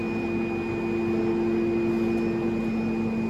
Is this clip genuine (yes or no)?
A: yes